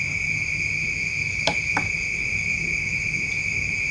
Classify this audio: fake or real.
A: real